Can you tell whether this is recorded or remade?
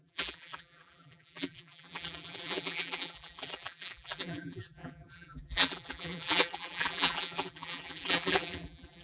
remade